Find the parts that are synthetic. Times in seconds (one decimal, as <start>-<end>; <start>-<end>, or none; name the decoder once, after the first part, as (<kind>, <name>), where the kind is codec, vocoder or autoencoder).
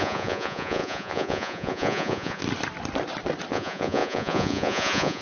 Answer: 0.0-2.4 (vocoder, Vocos); 3.5-5.2